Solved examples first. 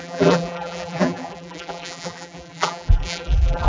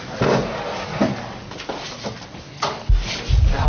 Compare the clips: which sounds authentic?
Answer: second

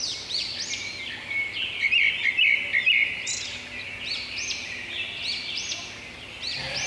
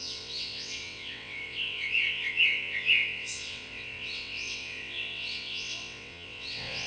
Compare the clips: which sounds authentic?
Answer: first